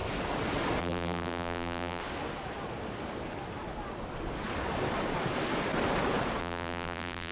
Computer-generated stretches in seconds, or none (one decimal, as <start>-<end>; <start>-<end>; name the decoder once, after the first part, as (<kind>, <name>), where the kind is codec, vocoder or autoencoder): 0.8-2.0 (vocoder, BigVGAN v2); 6.4-7.3